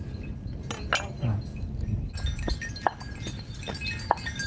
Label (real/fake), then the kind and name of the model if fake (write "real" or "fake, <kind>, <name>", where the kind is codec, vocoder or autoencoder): real